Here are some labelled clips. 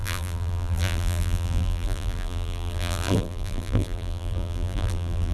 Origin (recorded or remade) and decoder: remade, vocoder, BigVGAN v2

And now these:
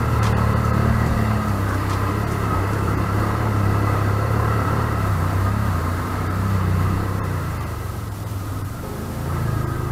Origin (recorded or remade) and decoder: remade, vocoder, BigVGAN v2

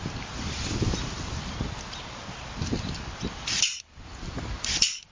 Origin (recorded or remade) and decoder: remade, vocoder, BigVGAN v2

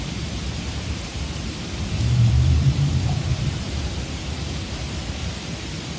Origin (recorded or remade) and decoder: remade, vocoder, BigVGAN v2